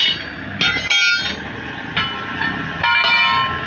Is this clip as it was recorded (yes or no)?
yes